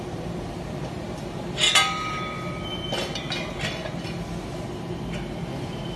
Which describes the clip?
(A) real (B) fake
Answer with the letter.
A